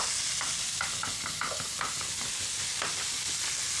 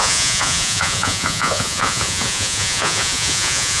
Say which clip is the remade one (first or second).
second